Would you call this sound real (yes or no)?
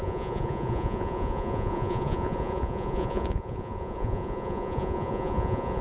no